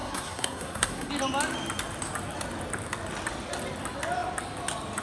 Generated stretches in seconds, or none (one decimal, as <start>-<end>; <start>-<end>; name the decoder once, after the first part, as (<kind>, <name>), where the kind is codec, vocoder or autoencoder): 0.0-1.1 (codec, SNAC)

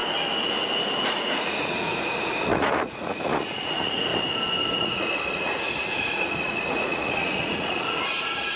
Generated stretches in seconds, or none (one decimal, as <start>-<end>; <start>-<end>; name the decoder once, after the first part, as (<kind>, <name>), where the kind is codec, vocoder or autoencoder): 1.1-4.1 (vocoder, Vocos); 4.8-8.6